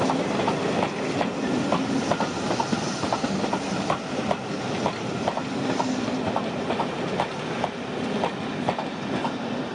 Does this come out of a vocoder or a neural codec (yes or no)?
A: no